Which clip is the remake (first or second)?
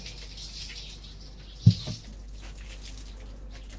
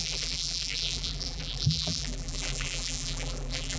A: second